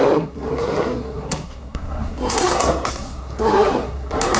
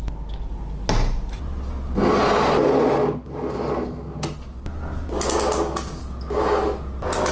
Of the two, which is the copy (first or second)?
first